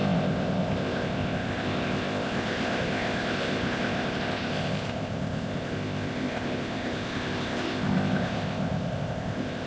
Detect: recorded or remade remade